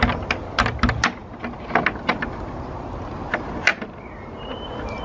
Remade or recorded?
recorded